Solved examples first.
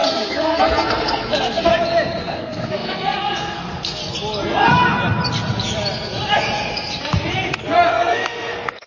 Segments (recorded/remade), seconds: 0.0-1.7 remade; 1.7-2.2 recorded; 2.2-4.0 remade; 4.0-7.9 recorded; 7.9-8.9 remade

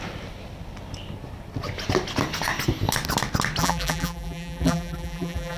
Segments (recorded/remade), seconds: 0.0-3.6 recorded; 3.6-5.6 remade

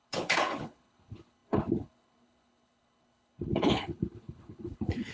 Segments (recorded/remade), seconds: 0.0-5.1 remade

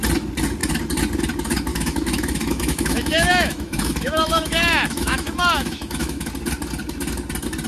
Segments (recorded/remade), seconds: 0.0-1.7 recorded; 1.7-6.3 remade; 6.3-7.7 recorded

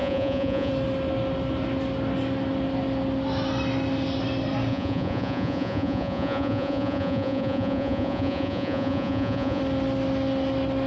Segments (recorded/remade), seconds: 0.0-0.7 remade; 0.7-4.7 recorded; 4.7-9.6 remade; 9.6-10.9 recorded

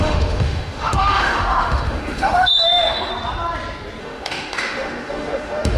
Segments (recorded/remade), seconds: 0.0-3.1 remade; 3.1-4.0 recorded; 4.0-5.8 remade

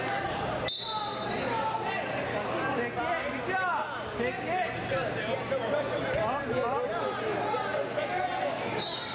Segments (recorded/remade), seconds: 0.0-9.1 recorded